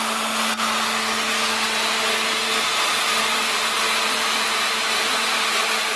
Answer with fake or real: real